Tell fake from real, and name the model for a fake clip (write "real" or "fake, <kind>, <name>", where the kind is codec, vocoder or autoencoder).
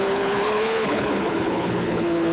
fake, codec, HILCodec